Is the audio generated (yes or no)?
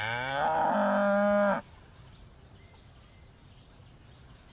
no